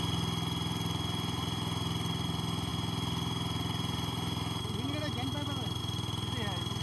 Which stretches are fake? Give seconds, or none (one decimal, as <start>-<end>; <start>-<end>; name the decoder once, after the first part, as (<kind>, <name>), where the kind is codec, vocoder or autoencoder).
none

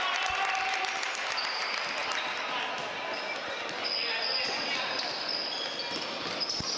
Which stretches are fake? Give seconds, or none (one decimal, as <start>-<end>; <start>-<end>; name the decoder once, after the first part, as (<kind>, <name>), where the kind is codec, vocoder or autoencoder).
none

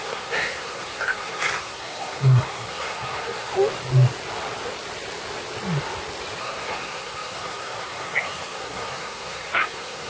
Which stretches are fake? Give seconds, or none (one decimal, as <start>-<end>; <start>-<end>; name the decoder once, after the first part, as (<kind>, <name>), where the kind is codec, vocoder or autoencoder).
0.0-3.5 (codec, SNAC); 6.4-10.1

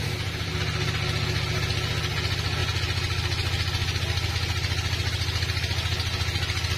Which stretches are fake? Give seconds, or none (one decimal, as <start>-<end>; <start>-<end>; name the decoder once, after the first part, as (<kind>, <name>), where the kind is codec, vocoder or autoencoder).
none

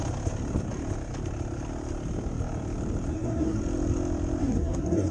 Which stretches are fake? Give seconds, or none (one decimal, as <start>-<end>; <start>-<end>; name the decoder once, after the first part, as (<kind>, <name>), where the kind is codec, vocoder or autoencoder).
3.1-3.6 (codec, SNAC); 4.4-5.1

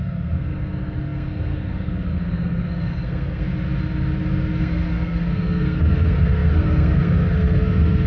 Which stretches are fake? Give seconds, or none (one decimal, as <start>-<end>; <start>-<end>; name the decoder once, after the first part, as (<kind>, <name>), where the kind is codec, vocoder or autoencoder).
0.0-3.5 (codec, SNAC); 4.6-8.1

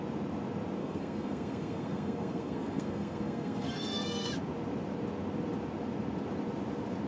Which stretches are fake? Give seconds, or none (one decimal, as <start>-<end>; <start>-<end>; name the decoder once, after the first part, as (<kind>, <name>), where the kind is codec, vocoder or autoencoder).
0.8-4.3 (codec, SNAC)

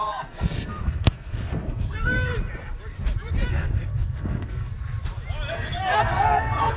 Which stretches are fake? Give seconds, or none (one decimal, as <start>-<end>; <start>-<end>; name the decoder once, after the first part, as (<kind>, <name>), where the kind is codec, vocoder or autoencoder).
0.0-2.3 (codec, SNAC); 3.5-4.7; 5.5-6.8